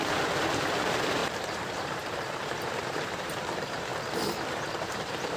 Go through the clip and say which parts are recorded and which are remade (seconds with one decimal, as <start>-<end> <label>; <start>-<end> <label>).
0.0-3.9 remade; 3.9-4.4 recorded; 4.4-5.4 remade